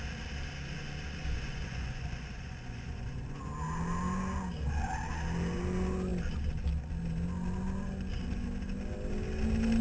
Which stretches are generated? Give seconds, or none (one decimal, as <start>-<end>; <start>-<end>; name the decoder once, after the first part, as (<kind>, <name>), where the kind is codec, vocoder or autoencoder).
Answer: 1.2-3.5 (vocoder, Vocos)